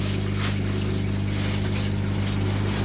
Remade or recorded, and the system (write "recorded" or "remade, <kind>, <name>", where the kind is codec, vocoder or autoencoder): recorded